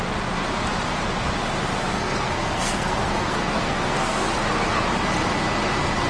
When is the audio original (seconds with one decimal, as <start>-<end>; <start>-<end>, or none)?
0.0-1.9; 4.2-6.1